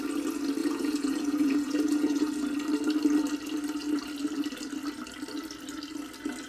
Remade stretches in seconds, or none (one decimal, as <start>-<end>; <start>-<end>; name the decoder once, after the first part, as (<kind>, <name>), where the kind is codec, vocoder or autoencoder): 0.6-2.3 (vocoder, Vocos)